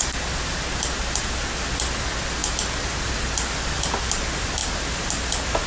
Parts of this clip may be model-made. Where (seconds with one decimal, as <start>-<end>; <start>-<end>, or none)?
none